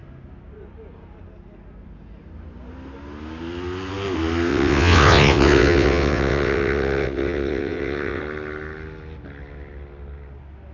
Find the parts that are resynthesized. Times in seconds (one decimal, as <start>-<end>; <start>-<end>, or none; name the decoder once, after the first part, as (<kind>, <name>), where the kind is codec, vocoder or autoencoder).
4.5-8.2 (vocoder, WaveNeXt)